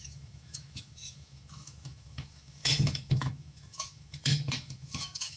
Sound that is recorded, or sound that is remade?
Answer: remade